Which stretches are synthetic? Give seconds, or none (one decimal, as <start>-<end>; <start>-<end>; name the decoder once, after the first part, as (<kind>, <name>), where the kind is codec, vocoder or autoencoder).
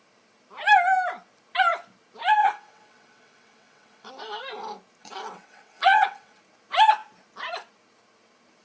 2.4-4.1 (vocoder, WaveNeXt); 5.0-6.4